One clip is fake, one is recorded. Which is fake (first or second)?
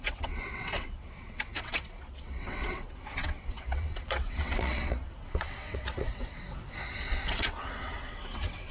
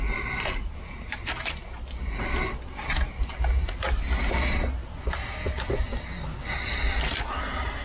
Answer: first